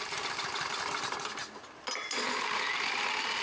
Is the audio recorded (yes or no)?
yes